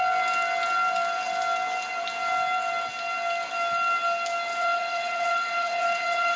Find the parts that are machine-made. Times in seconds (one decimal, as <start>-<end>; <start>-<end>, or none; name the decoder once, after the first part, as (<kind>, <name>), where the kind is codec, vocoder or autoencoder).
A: 4.5-6.4 (vocoder, WaveNeXt)